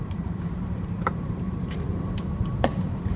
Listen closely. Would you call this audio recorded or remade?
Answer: remade